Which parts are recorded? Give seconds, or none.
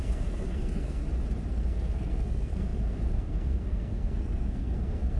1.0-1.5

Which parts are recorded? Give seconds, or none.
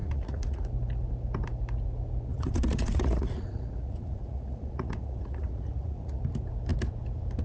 0.6-2.3; 6.2-7.4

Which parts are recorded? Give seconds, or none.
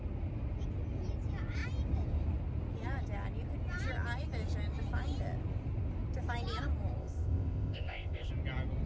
0.0-7.0; 8.3-8.9